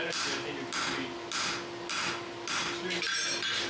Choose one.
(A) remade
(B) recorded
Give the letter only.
B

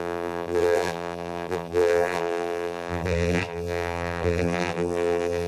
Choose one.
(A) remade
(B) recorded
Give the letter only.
A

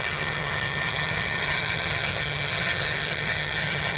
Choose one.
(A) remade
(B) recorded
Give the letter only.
A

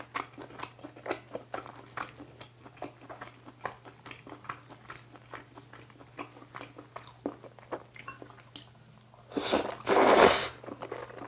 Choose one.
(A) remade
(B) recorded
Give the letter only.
B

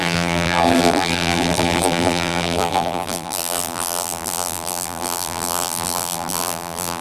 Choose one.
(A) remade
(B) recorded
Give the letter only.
A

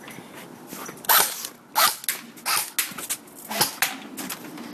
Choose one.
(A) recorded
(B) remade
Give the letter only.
A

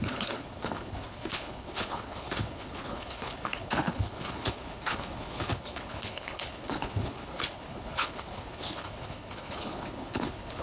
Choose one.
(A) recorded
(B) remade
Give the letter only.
B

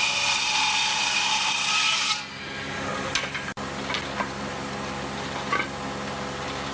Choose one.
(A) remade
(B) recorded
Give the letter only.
B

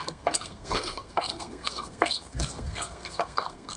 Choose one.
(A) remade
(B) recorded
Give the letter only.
A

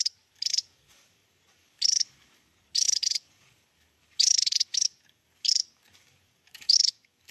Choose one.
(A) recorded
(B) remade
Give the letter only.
B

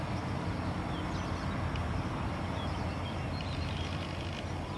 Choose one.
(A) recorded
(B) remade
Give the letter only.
A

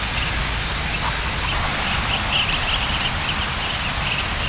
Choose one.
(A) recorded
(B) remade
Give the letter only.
A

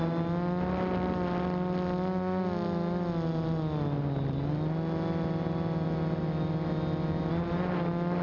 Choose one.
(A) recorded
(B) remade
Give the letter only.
A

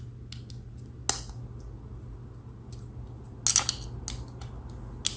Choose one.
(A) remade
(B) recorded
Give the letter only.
B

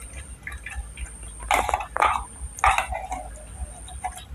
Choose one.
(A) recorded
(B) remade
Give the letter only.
A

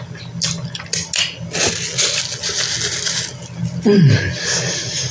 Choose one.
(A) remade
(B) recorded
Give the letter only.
B